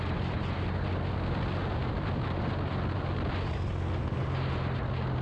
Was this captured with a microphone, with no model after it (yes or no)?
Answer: yes